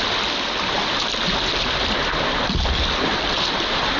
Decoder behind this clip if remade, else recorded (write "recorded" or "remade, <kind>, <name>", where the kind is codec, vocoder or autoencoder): recorded